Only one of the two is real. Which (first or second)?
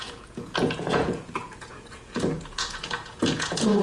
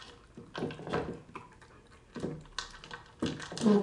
second